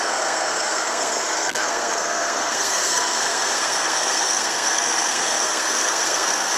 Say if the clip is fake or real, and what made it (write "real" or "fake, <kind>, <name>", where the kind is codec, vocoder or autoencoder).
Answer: fake, codec, SNAC